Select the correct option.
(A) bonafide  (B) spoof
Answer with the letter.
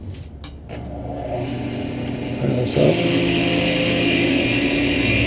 A